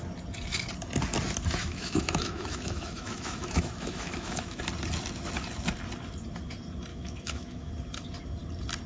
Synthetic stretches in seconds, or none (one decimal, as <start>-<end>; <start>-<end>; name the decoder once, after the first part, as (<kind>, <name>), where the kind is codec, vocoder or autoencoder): 1.6-4.6 (autoencoder, DAC-VAE); 6.9-7.7